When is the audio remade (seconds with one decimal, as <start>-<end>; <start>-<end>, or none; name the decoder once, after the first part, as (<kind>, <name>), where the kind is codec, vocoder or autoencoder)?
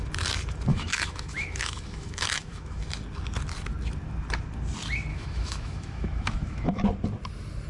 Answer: 0.7-2.8 (autoencoder, DAC-VAE); 5.1-6.8